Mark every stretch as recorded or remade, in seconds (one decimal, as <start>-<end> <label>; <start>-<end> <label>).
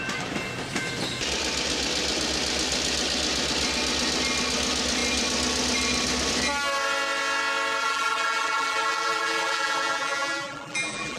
0.0-7.8 recorded; 7.8-11.2 remade